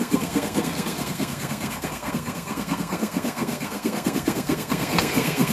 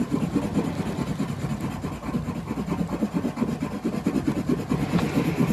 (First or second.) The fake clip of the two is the first